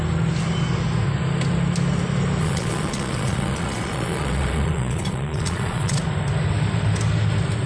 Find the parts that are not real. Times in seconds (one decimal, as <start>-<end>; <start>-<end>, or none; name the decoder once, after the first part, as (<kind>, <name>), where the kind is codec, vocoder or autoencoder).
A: 2.4-6.0 (vocoder, Vocos)